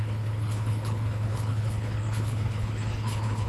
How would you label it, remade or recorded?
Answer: remade